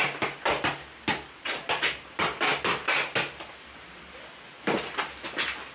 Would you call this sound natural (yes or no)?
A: yes